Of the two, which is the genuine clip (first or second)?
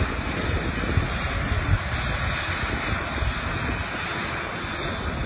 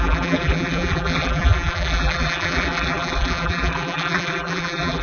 first